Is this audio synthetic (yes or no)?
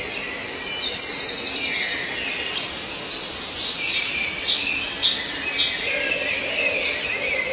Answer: no